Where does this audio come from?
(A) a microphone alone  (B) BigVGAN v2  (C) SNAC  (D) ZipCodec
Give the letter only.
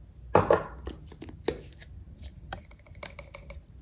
A